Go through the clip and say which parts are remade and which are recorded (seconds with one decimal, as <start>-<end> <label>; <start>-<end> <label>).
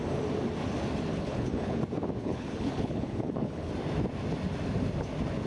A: 0.0-1.1 recorded; 1.1-1.8 remade; 1.8-2.2 recorded; 2.2-3.7 remade; 3.7-5.5 recorded